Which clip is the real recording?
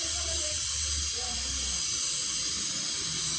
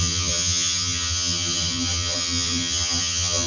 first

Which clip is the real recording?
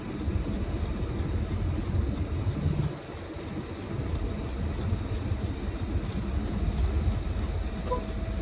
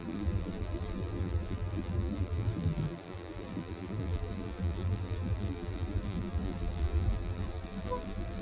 first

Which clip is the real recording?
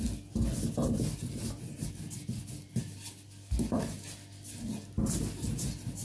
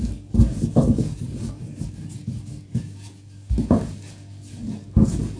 first